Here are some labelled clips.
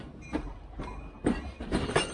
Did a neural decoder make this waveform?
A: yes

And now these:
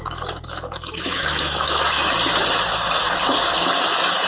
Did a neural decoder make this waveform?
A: yes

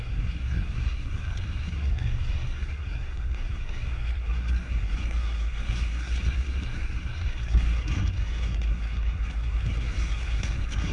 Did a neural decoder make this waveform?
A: yes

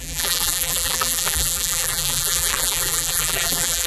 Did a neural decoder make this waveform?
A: yes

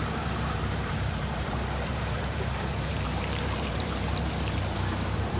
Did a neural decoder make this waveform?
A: yes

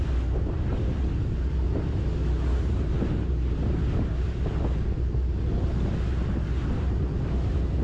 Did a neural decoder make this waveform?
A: no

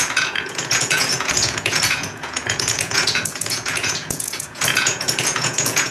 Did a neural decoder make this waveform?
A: yes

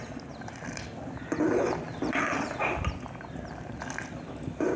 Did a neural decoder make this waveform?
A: no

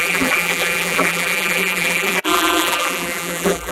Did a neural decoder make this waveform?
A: yes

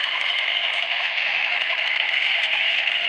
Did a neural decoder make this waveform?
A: yes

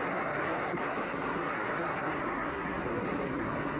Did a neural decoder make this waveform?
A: yes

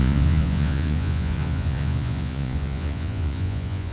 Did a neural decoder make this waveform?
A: yes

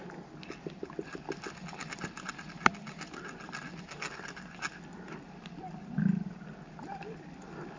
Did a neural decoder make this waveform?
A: no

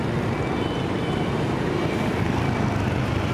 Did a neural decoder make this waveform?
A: yes